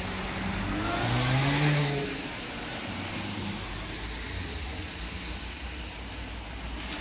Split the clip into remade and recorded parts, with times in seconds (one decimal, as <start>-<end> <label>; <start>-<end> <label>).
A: 0.0-1.8 recorded; 1.8-3.4 remade; 3.4-7.0 recorded